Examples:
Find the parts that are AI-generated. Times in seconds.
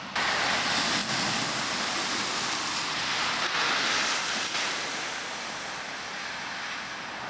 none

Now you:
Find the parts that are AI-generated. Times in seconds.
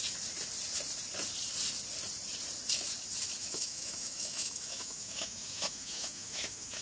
3.4-6.8 (autoencoder, DAC-VAE)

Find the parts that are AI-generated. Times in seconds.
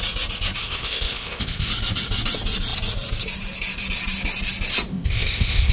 0.6-1.7 (codec, ZipCodec); 4.9-5.7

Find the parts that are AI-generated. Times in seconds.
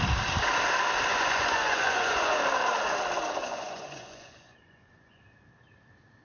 1.1-2.4 (vocoder, Vocos); 3.4-5.2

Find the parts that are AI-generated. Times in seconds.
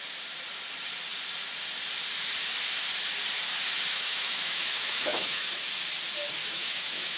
3.9-5.7 (autoencoder, DAC-VAE); 6.4-7.2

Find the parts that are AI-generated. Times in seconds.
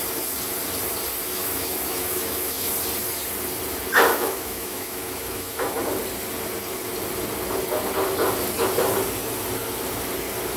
1.4-2.7 (autoencoder, DAC-VAE); 4.1-5.8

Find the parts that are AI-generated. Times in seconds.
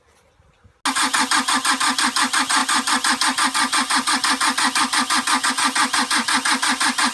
none